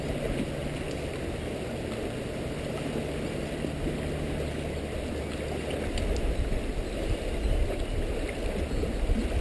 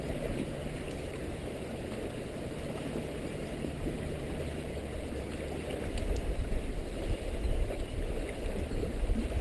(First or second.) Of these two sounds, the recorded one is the first